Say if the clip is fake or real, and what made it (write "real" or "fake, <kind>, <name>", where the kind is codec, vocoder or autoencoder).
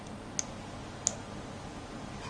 real